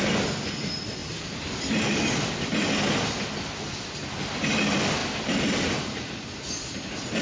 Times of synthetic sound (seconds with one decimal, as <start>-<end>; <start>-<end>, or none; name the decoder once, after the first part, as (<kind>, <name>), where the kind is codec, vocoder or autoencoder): none